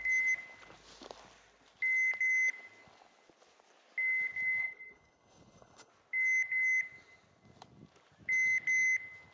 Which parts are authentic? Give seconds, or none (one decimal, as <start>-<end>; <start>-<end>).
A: 0.0-4.6; 5.9-9.3